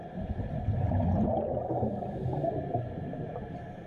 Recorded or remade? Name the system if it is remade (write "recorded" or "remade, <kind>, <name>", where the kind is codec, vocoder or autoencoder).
recorded